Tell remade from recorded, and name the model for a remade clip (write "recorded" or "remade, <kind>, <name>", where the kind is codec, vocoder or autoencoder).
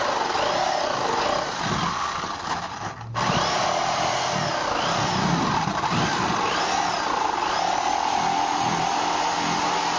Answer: recorded